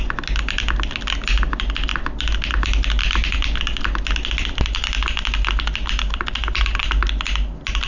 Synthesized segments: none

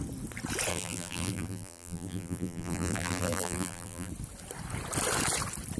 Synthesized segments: 0.7-4.1 (vocoder, BigVGAN v2)

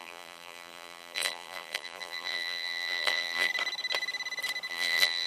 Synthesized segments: 0.0-3.5 (vocoder, BigVGAN v2); 4.7-5.3

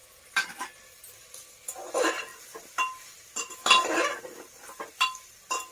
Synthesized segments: 0.0-0.5 (vocoder, BigVGAN v2)

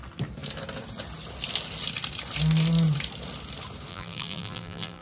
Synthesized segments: 3.9-5.0 (vocoder, BigVGAN v2)

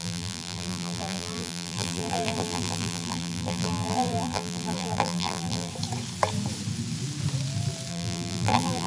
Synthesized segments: 0.0-5.7 (vocoder, BigVGAN v2); 7.9-8.9

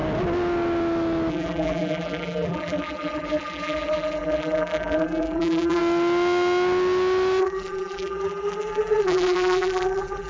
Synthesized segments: 1.3-5.8 (vocoder, BigVGAN v2); 7.4-10.3

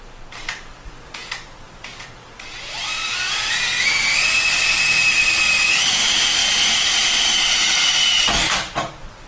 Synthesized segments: 0.0-3.7 (vocoder, BigVGAN v2); 4.5-6.4; 7.7-9.3